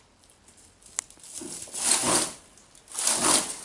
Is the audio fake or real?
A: real